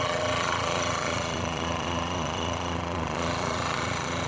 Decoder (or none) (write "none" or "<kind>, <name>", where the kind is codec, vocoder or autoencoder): vocoder, Vocos